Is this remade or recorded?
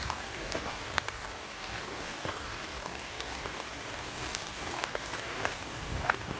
remade